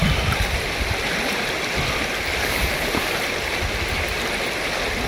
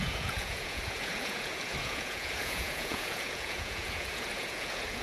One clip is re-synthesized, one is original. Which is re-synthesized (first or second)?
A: second